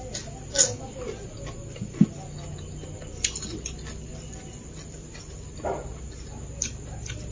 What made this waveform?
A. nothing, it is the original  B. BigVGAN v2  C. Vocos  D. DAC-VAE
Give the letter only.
A